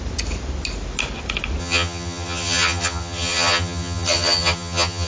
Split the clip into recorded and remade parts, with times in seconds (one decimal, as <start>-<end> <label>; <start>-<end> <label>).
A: 0.0-1.6 recorded; 1.6-5.1 remade